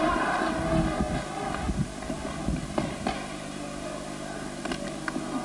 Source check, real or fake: real